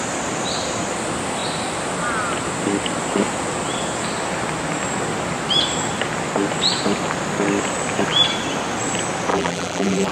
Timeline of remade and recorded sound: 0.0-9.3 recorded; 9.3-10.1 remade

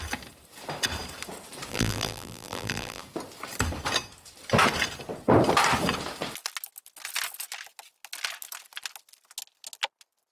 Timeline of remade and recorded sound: 0.0-1.7 recorded; 1.7-3.0 remade; 3.0-10.3 recorded

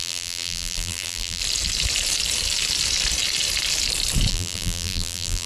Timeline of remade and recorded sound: 0.0-1.4 remade; 1.4-4.3 recorded; 4.3-5.5 remade

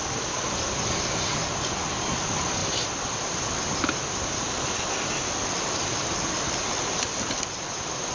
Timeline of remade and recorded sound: 0.0-8.1 remade

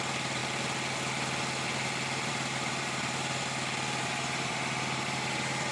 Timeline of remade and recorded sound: 0.0-0.4 remade; 0.4-2.3 recorded; 2.3-3.4 remade; 3.4-4.0 recorded; 4.0-5.7 remade

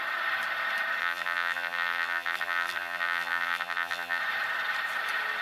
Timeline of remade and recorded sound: 0.0-1.0 recorded; 1.0-4.2 remade; 4.2-5.4 recorded

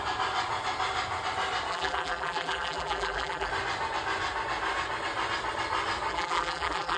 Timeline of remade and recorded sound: 0.0-1.7 recorded; 1.7-3.5 remade; 3.5-6.1 recorded; 6.1-7.0 remade